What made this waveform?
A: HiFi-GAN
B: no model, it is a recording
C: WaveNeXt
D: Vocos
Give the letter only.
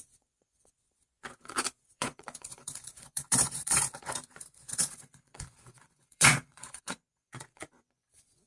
D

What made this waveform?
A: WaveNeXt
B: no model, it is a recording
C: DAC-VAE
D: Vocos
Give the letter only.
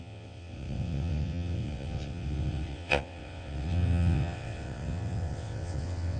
A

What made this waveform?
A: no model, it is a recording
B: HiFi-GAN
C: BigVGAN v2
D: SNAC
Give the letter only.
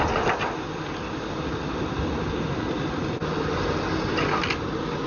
A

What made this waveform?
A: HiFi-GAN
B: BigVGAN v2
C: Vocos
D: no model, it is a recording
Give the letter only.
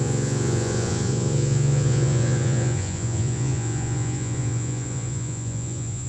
C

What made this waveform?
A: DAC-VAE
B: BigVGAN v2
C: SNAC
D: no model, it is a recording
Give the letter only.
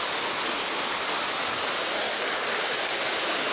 D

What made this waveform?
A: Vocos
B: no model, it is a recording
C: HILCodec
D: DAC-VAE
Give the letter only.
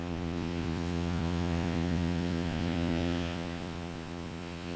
A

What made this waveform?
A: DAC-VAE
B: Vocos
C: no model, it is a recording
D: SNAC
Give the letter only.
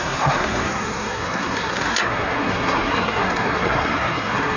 D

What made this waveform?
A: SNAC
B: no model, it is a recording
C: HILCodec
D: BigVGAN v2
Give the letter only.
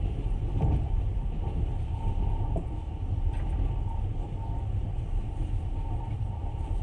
D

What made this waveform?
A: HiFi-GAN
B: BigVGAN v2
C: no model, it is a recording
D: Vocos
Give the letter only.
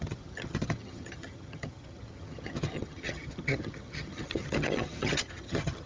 A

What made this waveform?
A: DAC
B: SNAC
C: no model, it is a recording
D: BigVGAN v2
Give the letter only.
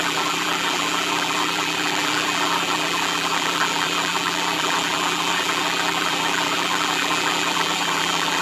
D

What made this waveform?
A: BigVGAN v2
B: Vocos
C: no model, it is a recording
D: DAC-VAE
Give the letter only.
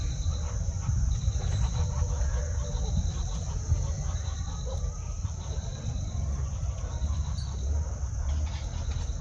C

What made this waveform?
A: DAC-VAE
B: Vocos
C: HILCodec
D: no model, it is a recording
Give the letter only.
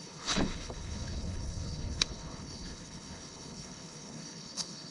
C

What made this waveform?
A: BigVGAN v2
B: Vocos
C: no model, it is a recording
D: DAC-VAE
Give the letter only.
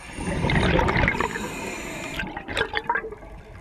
C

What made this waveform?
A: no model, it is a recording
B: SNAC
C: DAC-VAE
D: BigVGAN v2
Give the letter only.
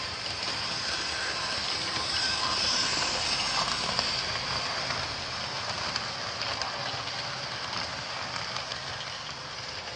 A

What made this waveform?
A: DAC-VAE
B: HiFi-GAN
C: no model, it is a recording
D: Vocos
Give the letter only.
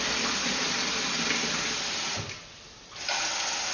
C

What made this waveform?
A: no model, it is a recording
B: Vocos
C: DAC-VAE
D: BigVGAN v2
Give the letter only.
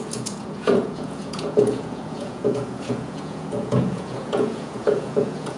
B